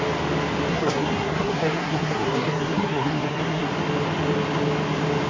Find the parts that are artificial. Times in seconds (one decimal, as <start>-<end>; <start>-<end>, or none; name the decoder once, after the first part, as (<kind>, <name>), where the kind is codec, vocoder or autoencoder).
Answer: 0.7-3.7 (codec, SNAC)